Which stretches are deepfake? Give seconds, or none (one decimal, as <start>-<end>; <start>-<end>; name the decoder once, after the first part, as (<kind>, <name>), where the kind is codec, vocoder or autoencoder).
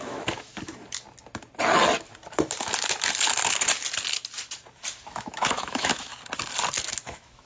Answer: 0.0-0.5 (autoencoder, DAC-VAE); 5.0-6.1; 7.0-7.5